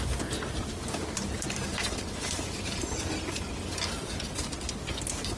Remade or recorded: recorded